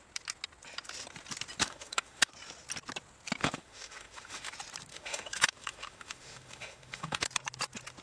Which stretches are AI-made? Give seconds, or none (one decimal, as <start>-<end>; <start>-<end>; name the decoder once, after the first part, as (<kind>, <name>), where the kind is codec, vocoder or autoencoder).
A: 1.6-2.3 (autoencoder, DAC-VAE); 3.4-4.5; 4.9-7.3